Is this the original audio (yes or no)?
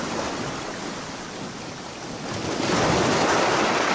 yes